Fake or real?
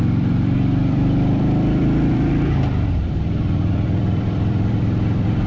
fake